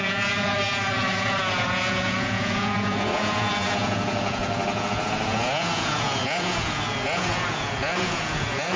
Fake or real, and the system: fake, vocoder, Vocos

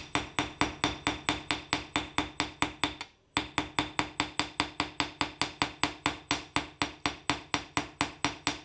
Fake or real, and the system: real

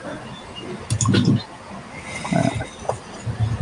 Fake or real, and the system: real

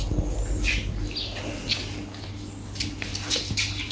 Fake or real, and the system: real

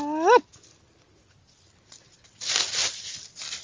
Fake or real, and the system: real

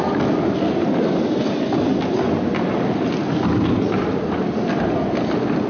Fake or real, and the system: real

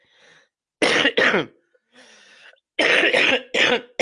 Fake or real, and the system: real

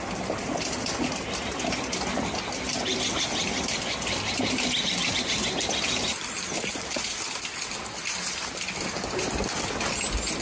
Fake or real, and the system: real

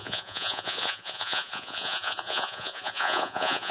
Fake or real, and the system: fake, vocoder, Vocos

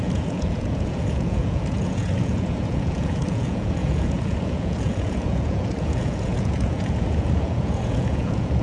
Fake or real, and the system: fake, vocoder, Vocos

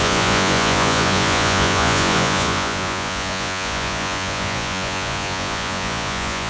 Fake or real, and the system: fake, vocoder, Vocos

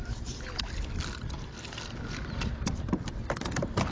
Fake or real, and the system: real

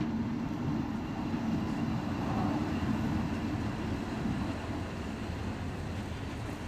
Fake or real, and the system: real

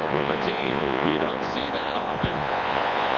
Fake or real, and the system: fake, vocoder, Vocos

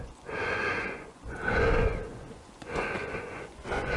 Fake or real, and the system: fake, vocoder, Vocos